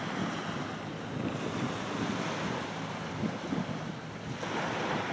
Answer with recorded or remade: recorded